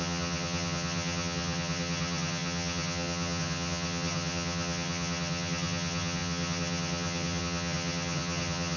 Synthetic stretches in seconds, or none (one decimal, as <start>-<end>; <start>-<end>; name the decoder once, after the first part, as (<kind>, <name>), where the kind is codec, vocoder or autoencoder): 0.0-8.8 (vocoder, HiFi-GAN)